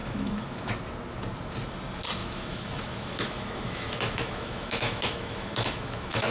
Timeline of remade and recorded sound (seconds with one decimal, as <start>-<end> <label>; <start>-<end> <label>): 0.0-0.7 remade; 0.7-2.2 recorded; 2.2-6.3 remade